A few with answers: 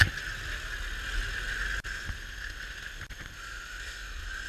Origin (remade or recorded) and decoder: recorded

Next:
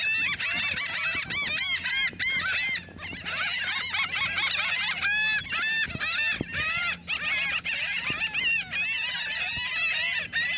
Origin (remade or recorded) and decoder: recorded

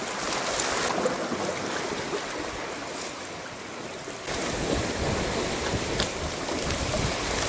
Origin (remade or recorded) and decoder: recorded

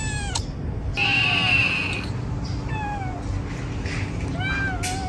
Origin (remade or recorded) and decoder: recorded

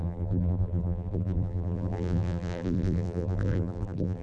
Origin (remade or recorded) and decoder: remade, vocoder, BigVGAN v2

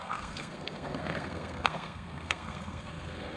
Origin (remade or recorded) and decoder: remade, codec, SNAC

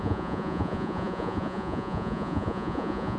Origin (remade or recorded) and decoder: remade, vocoder, Vocos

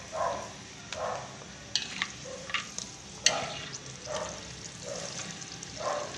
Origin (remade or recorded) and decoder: recorded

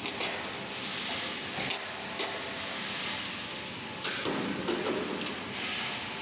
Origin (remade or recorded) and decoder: recorded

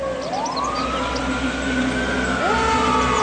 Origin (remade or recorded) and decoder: recorded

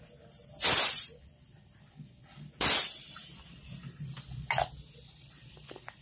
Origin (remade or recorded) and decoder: remade, vocoder, BigVGAN v2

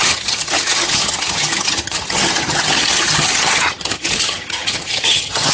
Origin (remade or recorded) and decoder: remade, vocoder, HiFi-GAN